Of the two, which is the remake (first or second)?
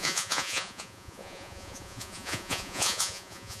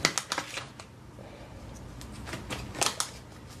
first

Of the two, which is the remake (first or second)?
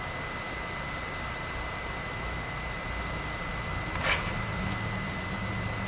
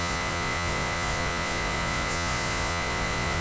second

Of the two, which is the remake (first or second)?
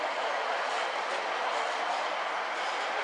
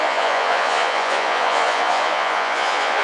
second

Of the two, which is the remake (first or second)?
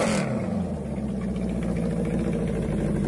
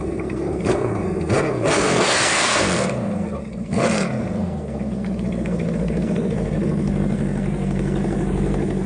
second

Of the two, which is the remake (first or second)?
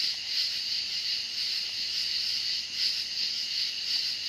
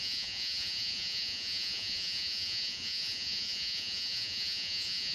second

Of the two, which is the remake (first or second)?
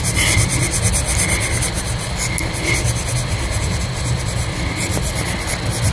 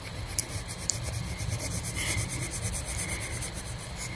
second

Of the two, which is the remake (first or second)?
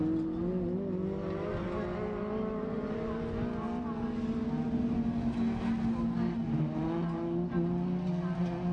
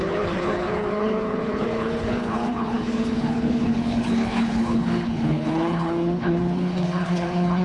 second